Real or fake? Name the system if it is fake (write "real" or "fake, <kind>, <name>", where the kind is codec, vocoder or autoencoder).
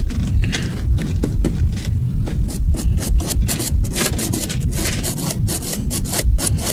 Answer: real